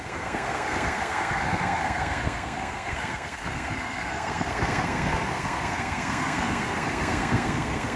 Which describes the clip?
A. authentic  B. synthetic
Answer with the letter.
B